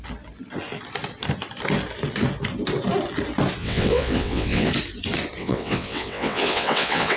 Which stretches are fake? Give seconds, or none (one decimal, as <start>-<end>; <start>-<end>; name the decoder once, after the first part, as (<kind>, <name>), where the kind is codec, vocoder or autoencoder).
3.6-4.7 (vocoder, WaveNeXt); 5.4-7.2